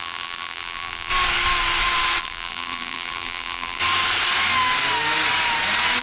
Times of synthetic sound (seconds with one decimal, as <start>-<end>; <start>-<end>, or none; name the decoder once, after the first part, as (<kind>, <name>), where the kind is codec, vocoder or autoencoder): 0.0-1.1 (vocoder, BigVGAN v2); 2.2-3.8